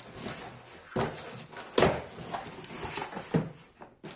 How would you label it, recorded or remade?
recorded